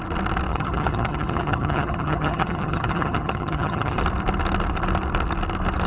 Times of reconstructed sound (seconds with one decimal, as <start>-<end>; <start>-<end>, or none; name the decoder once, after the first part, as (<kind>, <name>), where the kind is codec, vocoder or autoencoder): 0.5-4.0 (vocoder, HiFi-GAN)